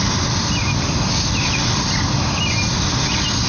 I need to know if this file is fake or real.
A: real